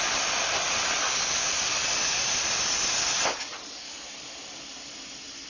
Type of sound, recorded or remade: recorded